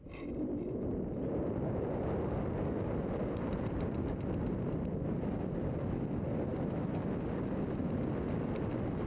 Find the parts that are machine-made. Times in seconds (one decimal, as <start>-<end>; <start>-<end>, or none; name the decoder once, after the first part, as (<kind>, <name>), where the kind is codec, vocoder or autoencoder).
none